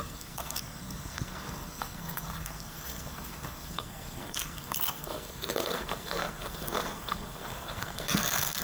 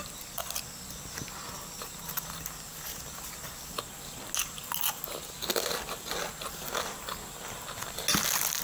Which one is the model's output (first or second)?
first